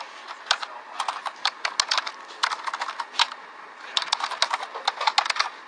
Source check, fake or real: real